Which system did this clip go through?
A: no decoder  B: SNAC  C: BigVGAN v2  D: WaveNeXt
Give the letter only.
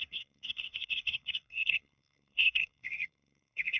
B